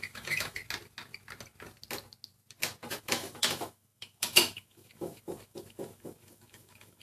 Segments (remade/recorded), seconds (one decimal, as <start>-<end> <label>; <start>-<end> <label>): 0.0-0.6 remade; 0.6-3.0 recorded; 3.0-7.0 remade